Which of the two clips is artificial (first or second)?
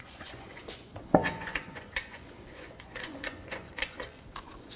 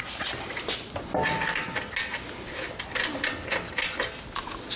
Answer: first